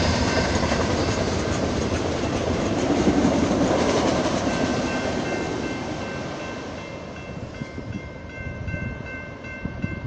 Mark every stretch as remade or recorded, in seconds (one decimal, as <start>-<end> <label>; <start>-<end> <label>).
0.0-4.7 remade; 4.7-8.0 recorded; 8.0-10.1 remade